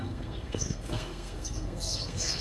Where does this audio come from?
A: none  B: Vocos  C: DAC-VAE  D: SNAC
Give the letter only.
D